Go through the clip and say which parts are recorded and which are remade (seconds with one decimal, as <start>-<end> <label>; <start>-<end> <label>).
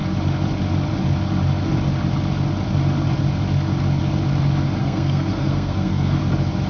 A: 0.0-4.8 recorded; 4.8-6.2 remade; 6.2-6.7 recorded